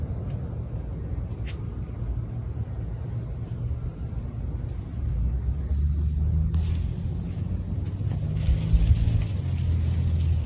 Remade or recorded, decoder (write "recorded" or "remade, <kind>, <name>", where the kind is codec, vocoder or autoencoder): recorded